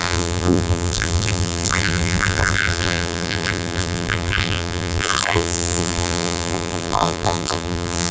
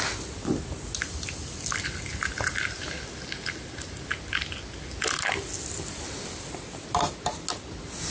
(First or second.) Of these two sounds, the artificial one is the first